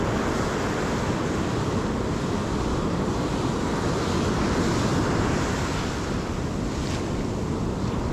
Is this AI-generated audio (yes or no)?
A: no